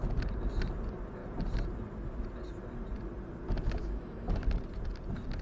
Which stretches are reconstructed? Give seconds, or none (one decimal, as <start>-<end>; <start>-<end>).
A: 3.8-4.3